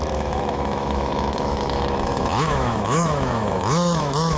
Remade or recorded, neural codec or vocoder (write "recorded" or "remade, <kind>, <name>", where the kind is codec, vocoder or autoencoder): remade, autoencoder, DAC-VAE